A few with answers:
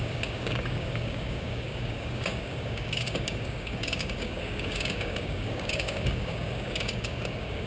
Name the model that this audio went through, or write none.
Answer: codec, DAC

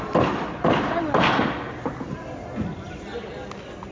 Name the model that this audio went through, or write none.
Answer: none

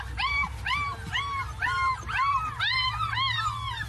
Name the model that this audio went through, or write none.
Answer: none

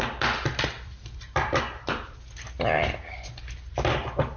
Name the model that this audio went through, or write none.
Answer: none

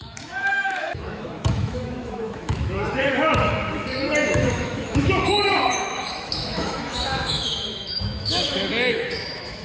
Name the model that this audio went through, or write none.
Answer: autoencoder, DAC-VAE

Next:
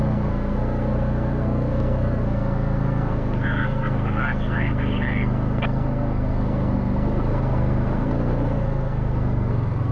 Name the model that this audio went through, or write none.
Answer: codec, SNAC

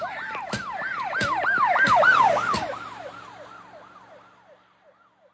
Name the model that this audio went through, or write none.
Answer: none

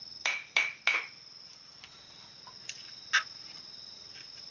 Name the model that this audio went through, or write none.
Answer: none